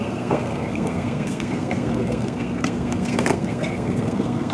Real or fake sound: fake